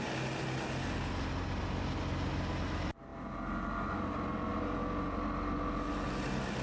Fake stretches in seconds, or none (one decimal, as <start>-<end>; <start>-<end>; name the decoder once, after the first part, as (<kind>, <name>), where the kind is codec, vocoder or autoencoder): none